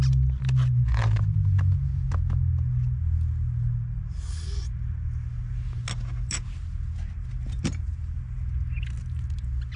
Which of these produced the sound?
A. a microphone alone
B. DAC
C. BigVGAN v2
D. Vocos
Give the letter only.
A